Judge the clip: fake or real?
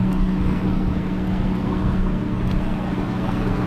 fake